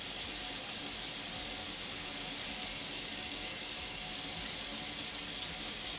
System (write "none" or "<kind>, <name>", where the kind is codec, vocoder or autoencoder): none